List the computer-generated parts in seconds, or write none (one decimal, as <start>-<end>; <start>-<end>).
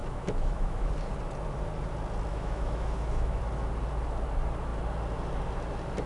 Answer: 0.0-0.9; 2.3-3.4